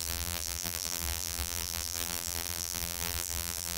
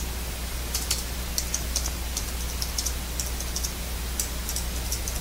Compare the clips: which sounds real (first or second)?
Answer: second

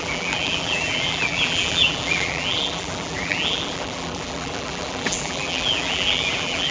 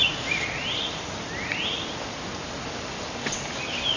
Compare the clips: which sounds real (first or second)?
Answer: second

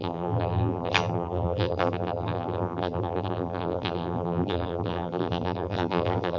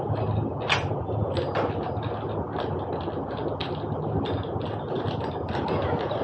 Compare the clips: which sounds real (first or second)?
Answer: second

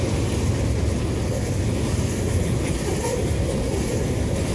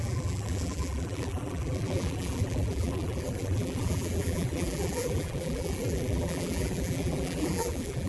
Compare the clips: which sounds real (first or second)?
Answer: first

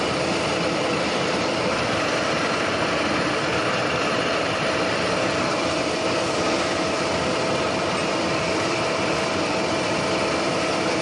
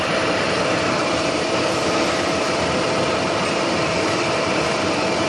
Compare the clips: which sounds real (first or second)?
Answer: first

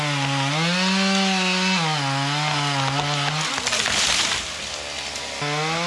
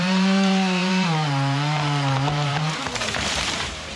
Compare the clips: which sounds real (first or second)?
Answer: first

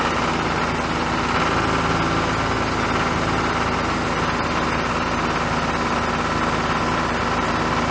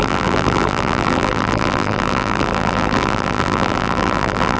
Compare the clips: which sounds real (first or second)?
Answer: first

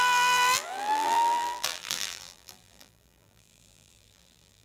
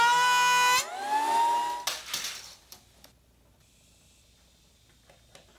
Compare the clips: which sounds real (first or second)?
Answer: second